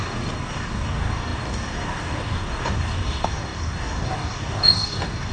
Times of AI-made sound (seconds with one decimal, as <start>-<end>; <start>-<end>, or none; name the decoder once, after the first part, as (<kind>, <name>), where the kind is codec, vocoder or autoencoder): 0.0-5.3 (codec, DAC)